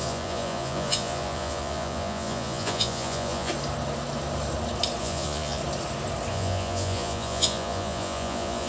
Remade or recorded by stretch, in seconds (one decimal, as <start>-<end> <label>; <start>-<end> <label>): 0.0-3.5 remade; 3.5-5.0 recorded; 5.0-5.6 remade; 5.6-6.3 recorded; 6.3-8.7 remade